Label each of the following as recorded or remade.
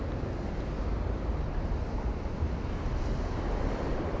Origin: recorded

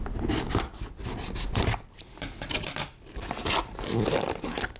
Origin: recorded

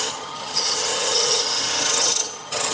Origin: remade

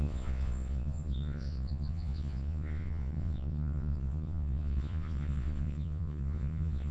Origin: remade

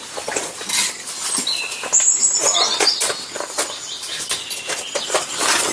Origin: recorded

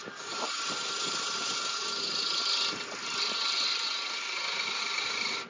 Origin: recorded